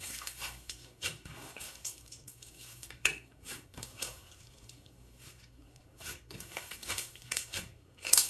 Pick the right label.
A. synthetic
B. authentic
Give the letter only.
A